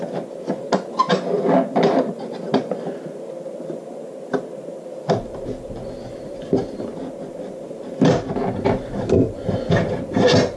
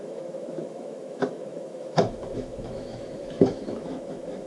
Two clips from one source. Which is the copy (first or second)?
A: second